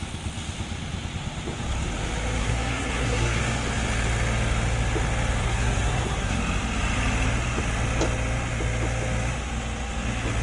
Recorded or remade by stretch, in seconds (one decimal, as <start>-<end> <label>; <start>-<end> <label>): 0.0-2.4 recorded; 2.4-3.4 remade; 3.4-5.4 recorded; 5.4-6.4 remade; 6.4-10.4 recorded